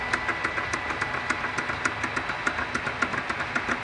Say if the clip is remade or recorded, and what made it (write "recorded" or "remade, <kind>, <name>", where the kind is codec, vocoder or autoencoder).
recorded